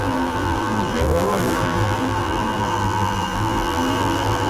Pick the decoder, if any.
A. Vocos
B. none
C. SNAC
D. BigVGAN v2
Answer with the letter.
D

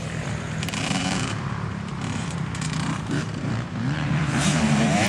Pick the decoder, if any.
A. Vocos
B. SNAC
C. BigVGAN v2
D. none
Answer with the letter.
C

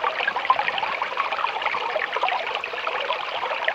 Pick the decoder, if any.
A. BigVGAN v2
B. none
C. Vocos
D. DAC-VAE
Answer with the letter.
A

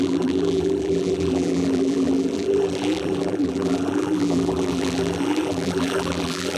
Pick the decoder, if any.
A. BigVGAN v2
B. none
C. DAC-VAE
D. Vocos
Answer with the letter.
A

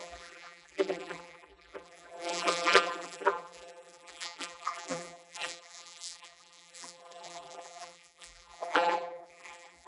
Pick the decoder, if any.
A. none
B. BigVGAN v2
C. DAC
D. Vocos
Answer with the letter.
B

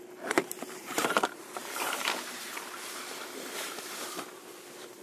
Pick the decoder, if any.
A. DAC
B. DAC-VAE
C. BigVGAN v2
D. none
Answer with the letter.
C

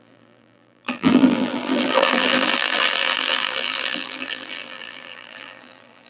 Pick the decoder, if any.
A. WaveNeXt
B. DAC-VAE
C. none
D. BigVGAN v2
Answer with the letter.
D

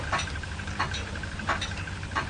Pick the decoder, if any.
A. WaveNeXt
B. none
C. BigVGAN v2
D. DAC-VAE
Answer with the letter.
B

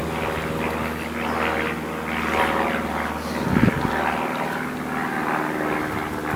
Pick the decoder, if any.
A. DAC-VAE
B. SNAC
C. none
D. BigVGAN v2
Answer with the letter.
C